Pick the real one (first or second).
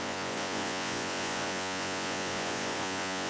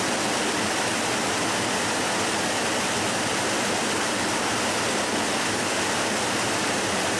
second